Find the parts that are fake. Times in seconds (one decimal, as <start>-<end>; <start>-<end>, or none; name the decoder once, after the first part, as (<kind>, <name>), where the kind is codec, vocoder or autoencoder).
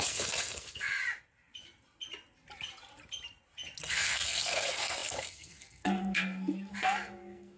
0.0-1.0 (codec, SNAC); 3.8-7.6